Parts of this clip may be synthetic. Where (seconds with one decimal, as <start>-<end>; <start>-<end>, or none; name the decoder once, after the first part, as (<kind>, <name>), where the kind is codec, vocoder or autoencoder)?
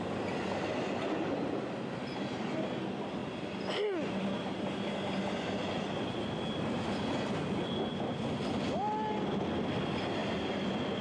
none